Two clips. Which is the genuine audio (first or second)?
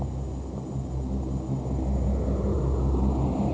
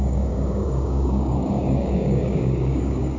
first